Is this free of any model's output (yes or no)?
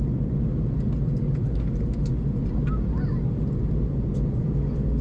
yes